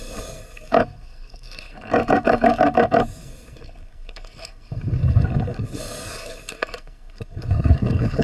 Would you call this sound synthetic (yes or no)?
yes